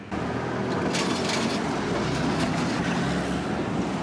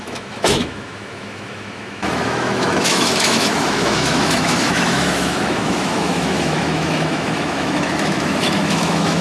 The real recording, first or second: first